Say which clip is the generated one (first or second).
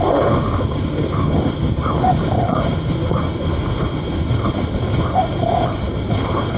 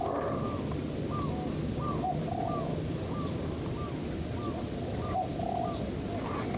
first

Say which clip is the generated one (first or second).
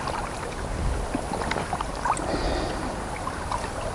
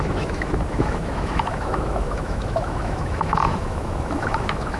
second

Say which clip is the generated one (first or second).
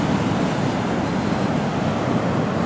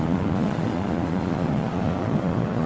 second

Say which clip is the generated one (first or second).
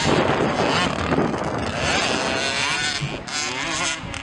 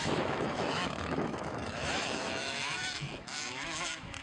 second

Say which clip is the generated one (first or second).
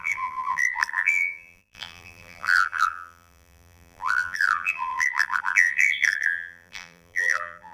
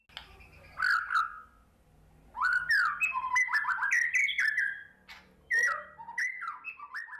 first